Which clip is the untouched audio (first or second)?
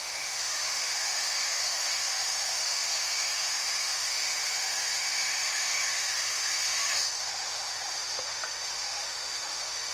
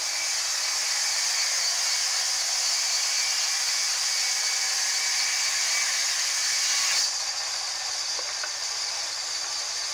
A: second